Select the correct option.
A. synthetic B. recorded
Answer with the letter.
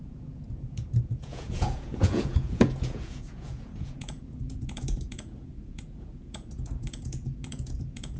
A